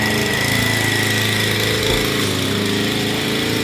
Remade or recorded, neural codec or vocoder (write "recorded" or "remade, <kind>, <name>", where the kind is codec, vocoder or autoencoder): recorded